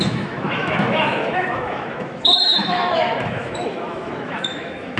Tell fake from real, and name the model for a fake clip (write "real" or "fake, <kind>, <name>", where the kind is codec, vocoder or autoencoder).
fake, autoencoder, DAC-VAE